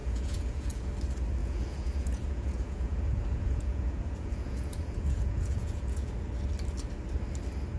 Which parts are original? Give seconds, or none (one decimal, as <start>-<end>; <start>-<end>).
0.9-1.4; 6.1-7.8